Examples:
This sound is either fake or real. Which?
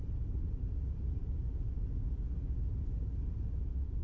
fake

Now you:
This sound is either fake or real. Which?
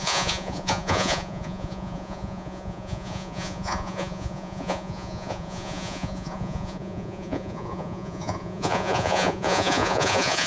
fake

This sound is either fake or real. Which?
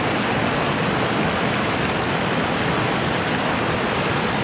real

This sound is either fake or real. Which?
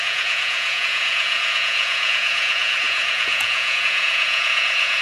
fake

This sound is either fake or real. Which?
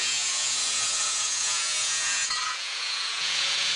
fake